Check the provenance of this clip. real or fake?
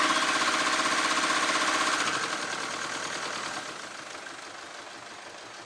real